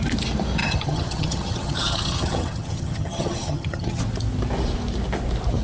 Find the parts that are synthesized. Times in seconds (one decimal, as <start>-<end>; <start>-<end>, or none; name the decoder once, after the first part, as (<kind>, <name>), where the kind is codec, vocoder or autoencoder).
0.6-4.0 (vocoder, HiFi-GAN)